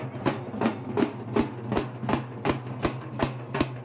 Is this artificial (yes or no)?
no